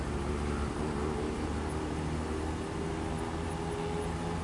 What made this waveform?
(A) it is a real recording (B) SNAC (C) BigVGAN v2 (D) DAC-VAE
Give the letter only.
A